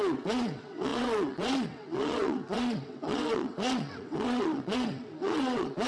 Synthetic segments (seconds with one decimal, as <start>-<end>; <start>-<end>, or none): 0.0-5.9